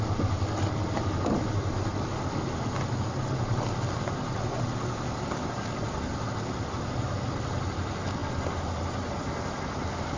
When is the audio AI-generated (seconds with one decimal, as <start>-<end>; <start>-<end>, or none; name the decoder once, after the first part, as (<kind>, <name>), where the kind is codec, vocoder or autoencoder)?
none

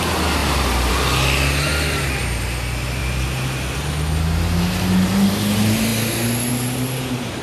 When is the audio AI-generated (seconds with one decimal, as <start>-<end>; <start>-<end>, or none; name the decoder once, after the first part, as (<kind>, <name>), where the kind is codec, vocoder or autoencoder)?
none

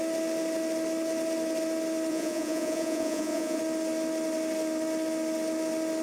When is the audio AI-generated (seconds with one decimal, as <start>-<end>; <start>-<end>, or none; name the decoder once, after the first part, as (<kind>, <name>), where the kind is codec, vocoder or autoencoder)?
2.1-3.6 (vocoder, Vocos)

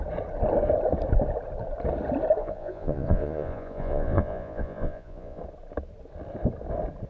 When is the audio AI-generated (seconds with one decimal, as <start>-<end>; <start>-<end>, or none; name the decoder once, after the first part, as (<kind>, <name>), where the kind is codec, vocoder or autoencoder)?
2.4-5.4 (vocoder, Vocos)